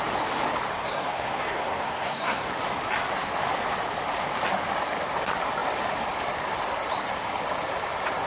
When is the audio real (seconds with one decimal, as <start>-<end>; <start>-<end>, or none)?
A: 0.0-0.8; 2.5-8.3